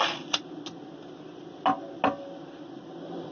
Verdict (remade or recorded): recorded